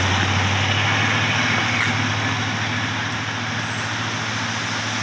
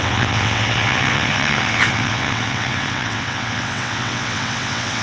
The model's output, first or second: second